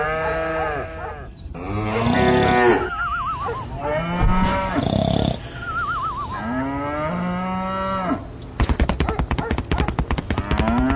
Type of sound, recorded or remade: recorded